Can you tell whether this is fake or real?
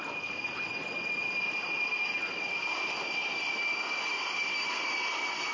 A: real